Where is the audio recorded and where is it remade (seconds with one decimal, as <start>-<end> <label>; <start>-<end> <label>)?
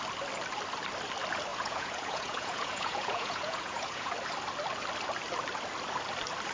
0.0-1.5 recorded; 1.5-4.1 remade; 4.1-6.5 recorded